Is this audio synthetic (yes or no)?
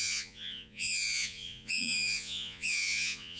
yes